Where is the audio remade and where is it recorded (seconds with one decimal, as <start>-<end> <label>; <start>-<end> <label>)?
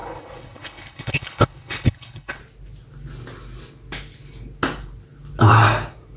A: 0.0-2.4 remade; 2.4-6.2 recorded